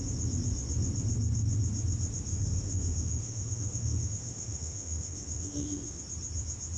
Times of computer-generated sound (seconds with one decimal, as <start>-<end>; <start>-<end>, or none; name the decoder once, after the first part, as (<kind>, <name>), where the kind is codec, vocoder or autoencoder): 2.3-6.0 (autoencoder, DAC-VAE)